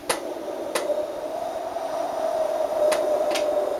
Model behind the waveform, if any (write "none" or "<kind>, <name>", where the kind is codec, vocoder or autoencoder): none